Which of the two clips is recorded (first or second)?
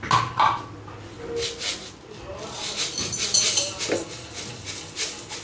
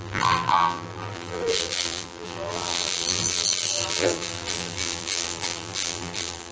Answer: first